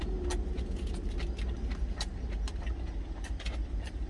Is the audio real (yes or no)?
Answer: yes